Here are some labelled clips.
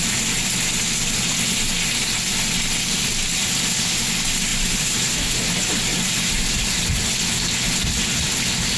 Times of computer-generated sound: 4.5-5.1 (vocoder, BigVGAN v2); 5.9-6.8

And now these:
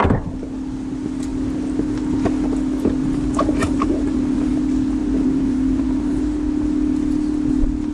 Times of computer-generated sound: 3.0-4.6 (vocoder, BigVGAN v2); 5.0-6.2